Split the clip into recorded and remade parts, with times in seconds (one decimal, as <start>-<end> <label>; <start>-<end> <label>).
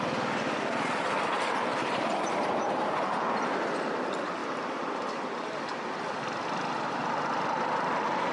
0.0-1.7 recorded; 1.7-3.2 remade; 3.2-4.4 recorded; 4.4-5.1 remade; 5.1-8.3 recorded